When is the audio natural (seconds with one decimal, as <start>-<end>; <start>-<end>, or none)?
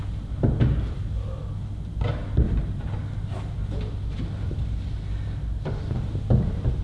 0.0-6.8